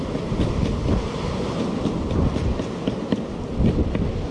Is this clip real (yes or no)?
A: yes